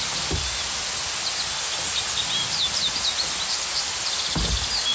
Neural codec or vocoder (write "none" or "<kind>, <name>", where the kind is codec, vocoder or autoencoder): none